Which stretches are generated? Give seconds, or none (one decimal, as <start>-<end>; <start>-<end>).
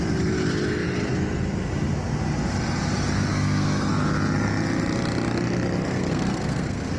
3.3-3.9; 5.9-7.0